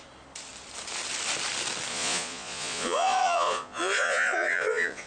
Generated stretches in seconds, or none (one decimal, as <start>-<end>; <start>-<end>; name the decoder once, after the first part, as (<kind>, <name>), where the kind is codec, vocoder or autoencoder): 1.9-5.1 (vocoder, Vocos)